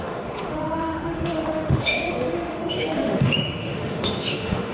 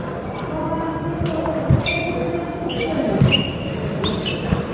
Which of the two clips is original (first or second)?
second